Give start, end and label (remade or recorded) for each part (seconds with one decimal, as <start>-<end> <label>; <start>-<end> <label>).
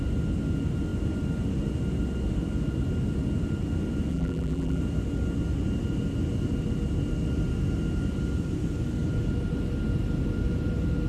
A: 0.0-4.1 recorded; 4.1-4.8 remade; 4.8-11.1 recorded